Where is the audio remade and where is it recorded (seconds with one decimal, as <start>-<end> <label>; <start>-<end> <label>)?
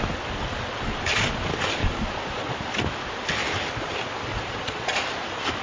0.0-1.8 recorded; 1.8-2.6 remade; 2.6-4.3 recorded; 4.3-5.0 remade; 5.0-5.6 recorded